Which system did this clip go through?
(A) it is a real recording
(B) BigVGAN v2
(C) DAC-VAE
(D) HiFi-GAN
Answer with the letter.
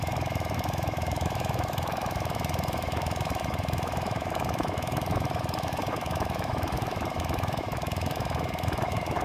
C